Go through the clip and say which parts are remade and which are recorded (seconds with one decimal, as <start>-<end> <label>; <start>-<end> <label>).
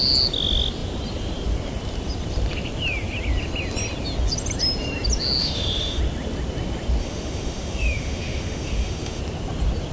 0.0-5.4 recorded; 5.4-6.0 remade; 6.0-7.0 recorded; 7.0-9.2 remade; 9.2-9.9 recorded